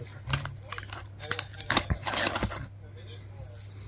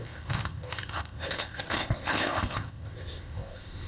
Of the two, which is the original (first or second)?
first